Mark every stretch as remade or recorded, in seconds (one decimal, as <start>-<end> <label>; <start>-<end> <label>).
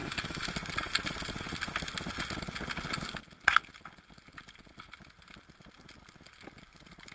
0.0-0.5 remade; 0.5-7.1 recorded